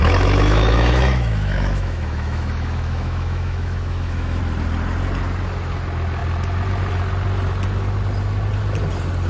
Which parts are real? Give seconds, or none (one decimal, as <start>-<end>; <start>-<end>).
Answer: 4.4-9.3

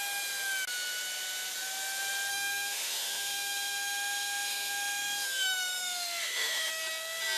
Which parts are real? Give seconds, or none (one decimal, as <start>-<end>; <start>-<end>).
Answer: 0.0-2.3; 6.7-7.4

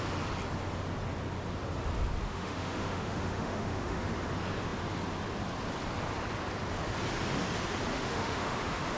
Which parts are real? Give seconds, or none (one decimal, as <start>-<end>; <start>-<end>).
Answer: 0.0-2.3; 4.1-7.9

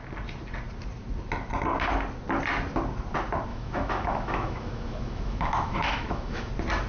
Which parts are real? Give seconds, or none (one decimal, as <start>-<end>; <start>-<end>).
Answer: 0.0-3.5; 6.5-6.9

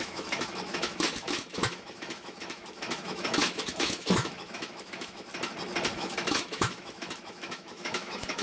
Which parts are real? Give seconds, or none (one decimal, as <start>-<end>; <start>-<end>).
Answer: 5.3-5.9

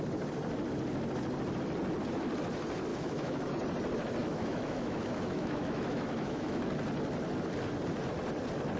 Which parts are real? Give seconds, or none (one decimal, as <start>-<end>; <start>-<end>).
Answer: 0.0-2.9; 3.5-4.2; 6.7-8.8

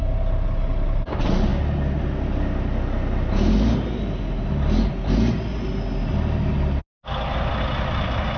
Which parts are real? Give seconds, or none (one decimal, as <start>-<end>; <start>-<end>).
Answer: 0.0-8.4